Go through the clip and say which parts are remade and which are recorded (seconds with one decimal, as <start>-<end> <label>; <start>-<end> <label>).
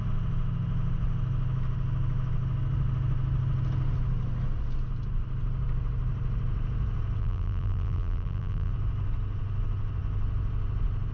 0.0-7.2 recorded; 7.2-8.7 remade; 8.7-11.1 recorded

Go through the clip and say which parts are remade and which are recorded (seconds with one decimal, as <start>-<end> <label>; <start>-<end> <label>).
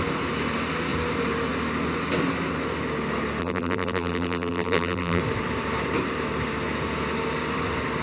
0.0-3.4 recorded; 3.4-5.2 remade; 5.2-8.0 recorded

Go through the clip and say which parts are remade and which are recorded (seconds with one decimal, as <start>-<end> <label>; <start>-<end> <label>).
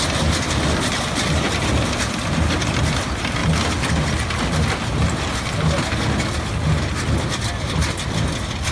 0.0-8.7 recorded